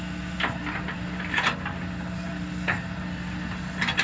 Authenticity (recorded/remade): recorded